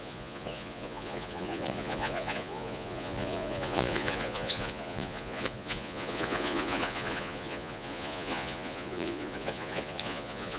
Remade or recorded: remade